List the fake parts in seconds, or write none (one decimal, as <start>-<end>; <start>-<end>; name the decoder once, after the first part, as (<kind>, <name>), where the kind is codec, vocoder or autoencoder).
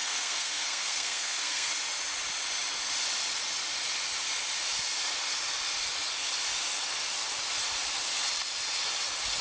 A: 0.0-1.7 (codec, SNAC)